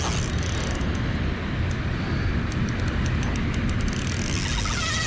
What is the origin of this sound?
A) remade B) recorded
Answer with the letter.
B